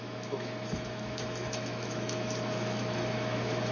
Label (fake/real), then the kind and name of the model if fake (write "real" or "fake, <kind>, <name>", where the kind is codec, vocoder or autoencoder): fake, autoencoder, DAC-VAE